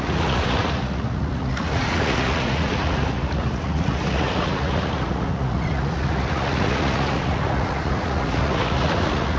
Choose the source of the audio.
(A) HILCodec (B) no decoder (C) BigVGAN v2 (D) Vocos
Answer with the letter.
D